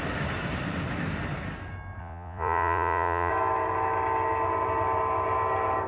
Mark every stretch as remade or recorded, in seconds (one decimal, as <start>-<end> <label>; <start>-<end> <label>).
0.0-2.0 recorded; 2.0-3.3 remade; 3.3-5.9 recorded

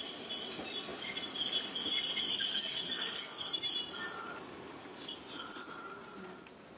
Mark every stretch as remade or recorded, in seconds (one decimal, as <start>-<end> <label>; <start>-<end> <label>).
0.0-6.8 recorded

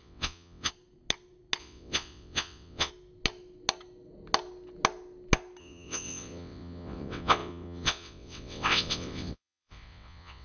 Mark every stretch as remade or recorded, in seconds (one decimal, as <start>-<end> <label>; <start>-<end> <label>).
0.0-0.7 remade; 0.7-1.6 recorded; 1.6-2.9 remade; 2.9-5.6 recorded; 5.6-10.4 remade

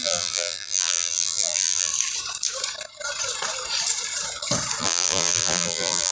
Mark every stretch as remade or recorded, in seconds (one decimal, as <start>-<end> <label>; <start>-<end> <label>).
0.0-1.9 remade; 1.9-4.8 recorded; 4.8-6.1 remade